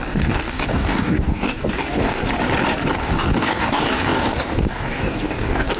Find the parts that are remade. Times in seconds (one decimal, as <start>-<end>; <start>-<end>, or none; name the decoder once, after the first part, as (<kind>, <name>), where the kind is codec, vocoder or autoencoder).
0.0-2.2 (codec, DAC); 3.0-5.8